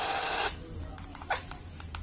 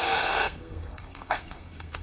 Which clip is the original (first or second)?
first